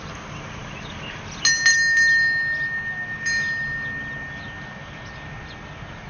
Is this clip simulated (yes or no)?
no